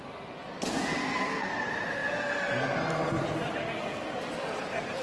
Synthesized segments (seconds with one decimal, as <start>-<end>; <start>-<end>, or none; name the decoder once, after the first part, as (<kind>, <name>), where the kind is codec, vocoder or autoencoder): 1.0-1.5 (codec, SNAC)